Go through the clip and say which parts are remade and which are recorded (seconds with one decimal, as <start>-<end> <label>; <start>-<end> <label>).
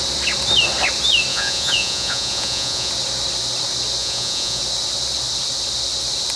0.0-1.3 recorded; 1.3-2.9 remade; 2.9-4.0 recorded; 4.0-4.6 remade; 4.6-6.4 recorded